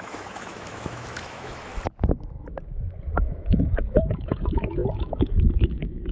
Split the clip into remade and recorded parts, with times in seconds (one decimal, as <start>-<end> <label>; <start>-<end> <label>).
0.0-1.7 remade; 1.7-3.2 recorded; 3.2-6.1 remade